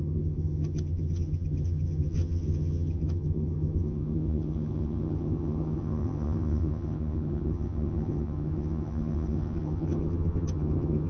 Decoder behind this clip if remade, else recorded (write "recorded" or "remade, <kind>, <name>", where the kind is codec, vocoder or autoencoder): remade, vocoder, HiFi-GAN